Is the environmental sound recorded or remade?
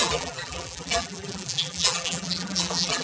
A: remade